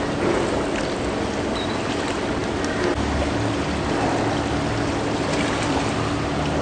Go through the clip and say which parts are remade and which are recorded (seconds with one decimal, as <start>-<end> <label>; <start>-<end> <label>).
0.0-6.6 recorded